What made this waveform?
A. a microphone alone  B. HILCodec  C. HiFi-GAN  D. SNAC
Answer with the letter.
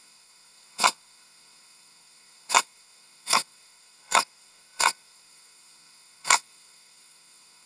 D